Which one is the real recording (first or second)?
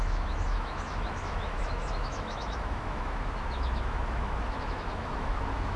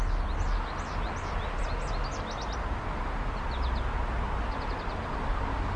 second